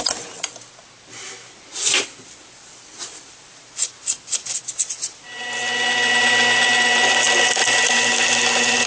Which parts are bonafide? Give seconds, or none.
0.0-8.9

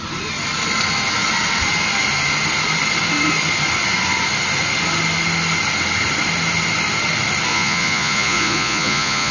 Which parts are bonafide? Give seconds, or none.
0.0-7.5

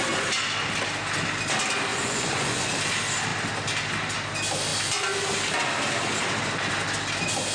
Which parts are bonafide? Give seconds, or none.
0.0-1.9; 2.7-7.5

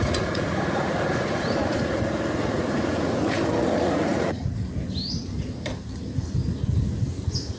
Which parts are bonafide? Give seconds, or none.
4.5-7.6